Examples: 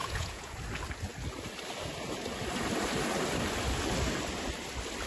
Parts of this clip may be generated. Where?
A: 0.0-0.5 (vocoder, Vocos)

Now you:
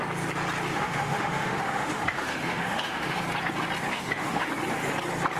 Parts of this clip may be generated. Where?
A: 0.7-3.2 (autoencoder, DAC-VAE); 3.9-4.5